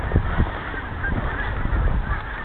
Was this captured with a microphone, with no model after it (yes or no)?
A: yes